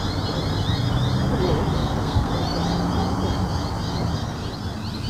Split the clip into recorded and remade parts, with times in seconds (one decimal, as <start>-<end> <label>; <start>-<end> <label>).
0.0-1.8 recorded; 1.8-2.3 remade; 2.3-5.1 recorded